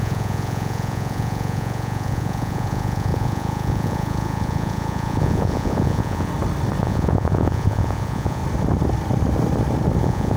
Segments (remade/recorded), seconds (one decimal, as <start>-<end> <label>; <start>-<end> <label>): 0.0-6.3 remade; 6.3-6.8 recorded; 6.8-8.4 remade; 8.4-10.0 recorded; 10.0-10.4 remade